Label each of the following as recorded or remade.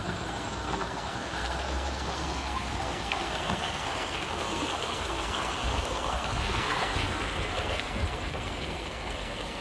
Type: remade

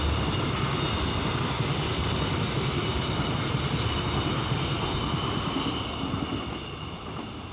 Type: recorded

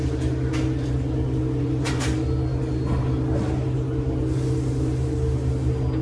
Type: recorded